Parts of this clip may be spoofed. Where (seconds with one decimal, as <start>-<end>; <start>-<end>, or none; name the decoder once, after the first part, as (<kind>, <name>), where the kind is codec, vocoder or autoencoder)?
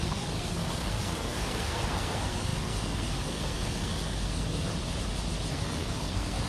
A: 0.0-4.7 (codec, SNAC); 5.5-6.5